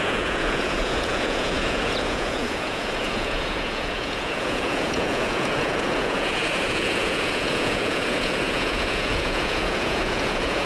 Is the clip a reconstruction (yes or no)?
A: yes